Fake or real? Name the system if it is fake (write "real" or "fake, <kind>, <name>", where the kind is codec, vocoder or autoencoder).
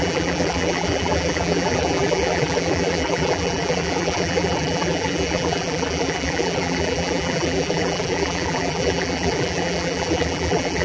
fake, vocoder, BigVGAN v2